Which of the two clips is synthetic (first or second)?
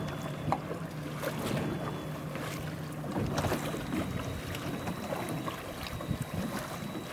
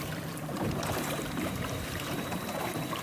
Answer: second